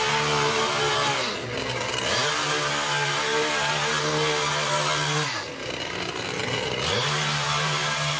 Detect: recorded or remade recorded